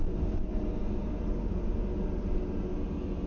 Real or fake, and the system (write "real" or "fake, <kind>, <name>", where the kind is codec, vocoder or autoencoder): real